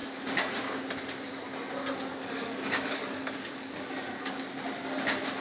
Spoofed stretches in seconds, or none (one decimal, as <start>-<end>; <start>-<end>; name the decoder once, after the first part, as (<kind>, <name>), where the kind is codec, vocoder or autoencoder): 2.1-4.5 (codec, DAC)